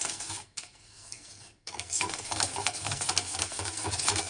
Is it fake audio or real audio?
fake